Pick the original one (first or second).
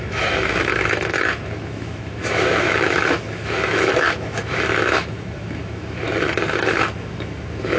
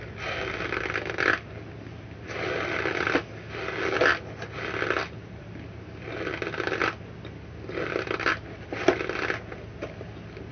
second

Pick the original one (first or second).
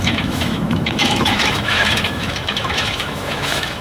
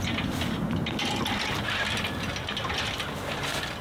second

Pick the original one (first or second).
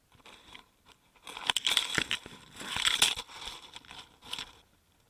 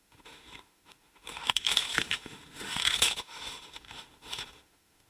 first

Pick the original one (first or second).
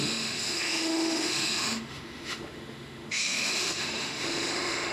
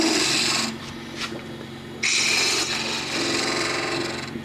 second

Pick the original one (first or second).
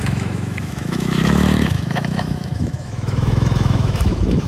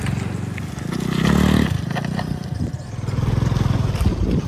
second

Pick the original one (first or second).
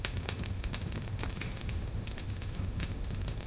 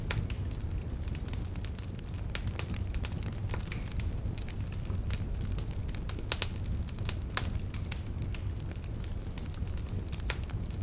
second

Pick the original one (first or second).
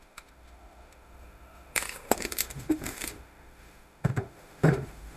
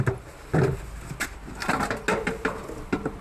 second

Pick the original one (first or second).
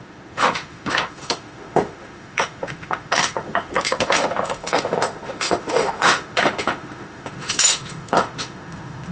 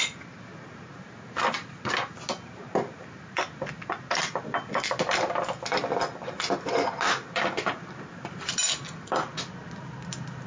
second